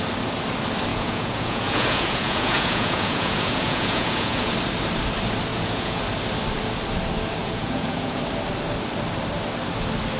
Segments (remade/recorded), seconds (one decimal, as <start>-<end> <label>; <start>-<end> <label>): 0.0-0.9 recorded; 0.9-4.5 remade; 4.5-5.5 recorded; 5.5-6.0 remade; 6.0-7.4 recorded; 7.4-8.2 remade; 8.2-10.2 recorded